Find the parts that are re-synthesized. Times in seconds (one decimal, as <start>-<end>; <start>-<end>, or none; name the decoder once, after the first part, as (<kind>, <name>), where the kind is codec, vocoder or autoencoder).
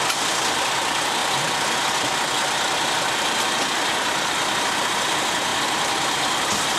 none